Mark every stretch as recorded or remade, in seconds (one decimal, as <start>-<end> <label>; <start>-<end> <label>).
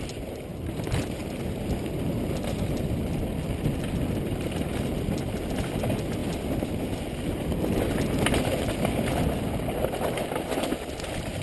0.0-0.5 recorded; 0.5-1.4 remade; 1.4-11.4 recorded